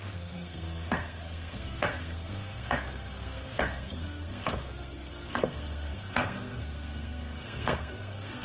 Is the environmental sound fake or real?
fake